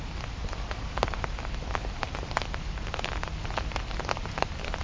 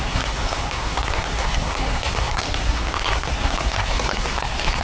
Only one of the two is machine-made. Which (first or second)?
second